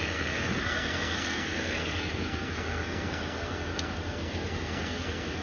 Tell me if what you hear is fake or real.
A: fake